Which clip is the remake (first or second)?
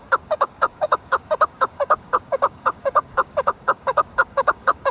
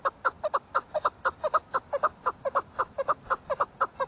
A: first